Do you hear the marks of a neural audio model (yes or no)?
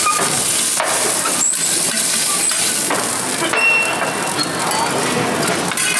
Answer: no